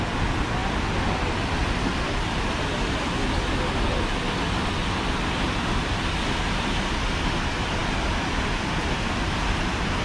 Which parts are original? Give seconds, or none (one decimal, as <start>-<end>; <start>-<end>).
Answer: 0.0-10.0